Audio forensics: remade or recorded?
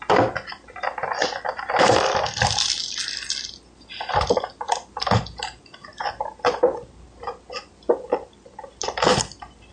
recorded